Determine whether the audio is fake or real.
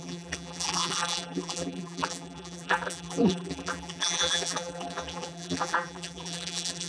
fake